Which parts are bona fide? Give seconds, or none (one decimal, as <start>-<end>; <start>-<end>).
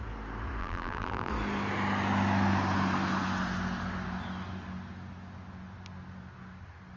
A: 0.0-0.6; 1.3-7.0